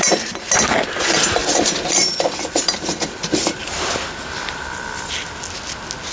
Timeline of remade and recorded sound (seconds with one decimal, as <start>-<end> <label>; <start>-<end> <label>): 0.0-1.4 recorded; 1.4-5.1 remade; 5.1-6.1 recorded